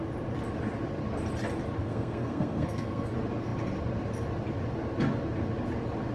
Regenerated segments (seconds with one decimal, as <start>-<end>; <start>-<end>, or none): 1.8-3.1